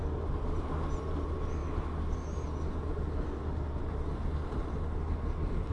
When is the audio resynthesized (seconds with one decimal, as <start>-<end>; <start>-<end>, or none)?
none